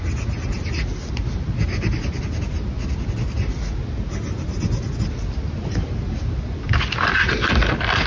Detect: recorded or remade recorded